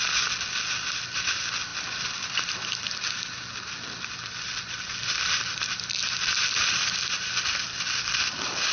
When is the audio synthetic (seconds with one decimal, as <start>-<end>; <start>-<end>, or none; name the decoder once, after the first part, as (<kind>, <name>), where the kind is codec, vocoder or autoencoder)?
none